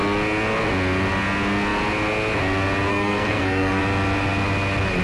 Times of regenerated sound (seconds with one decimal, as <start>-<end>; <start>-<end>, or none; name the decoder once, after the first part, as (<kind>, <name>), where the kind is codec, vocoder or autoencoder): 2.9-3.8 (codec, SNAC)